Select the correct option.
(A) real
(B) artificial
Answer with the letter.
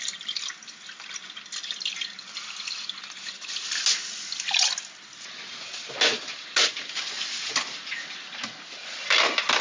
A